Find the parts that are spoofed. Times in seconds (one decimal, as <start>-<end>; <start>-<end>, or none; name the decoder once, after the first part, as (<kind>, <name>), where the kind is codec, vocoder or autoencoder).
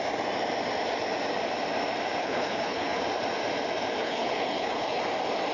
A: 2.2-3.0 (codec, HILCodec); 4.0-5.0